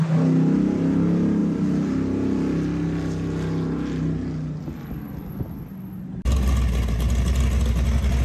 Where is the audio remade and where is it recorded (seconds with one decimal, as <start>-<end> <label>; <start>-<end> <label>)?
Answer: 0.0-8.2 recorded